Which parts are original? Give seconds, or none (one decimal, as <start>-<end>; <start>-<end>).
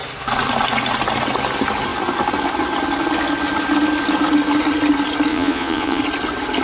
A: 0.0-5.3; 6.0-6.6